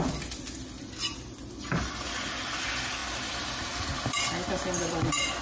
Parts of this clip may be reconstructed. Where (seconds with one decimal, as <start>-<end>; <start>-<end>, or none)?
none